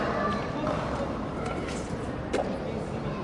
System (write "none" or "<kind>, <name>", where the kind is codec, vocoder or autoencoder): none